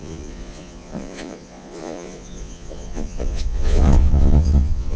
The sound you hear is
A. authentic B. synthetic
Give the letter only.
B